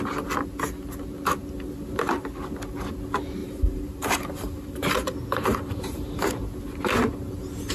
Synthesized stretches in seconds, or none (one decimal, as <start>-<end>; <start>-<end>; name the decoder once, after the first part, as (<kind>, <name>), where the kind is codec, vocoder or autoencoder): 3.4-6.3 (vocoder, BigVGAN v2)